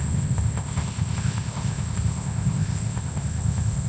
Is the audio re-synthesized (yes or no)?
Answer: yes